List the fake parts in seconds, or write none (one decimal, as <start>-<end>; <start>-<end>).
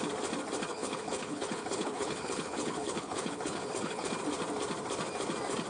0.7-4.1